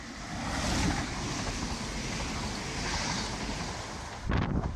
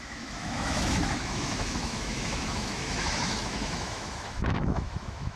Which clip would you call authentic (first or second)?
first